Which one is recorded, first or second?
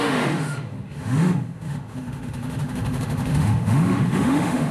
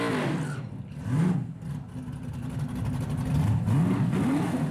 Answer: second